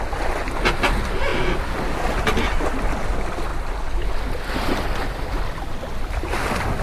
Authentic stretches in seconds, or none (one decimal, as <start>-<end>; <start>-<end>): 0.0-6.8